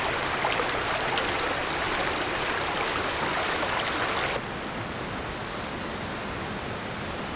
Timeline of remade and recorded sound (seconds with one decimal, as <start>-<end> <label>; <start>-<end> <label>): 0.0-1.6 recorded; 1.6-3.3 remade; 3.3-7.4 recorded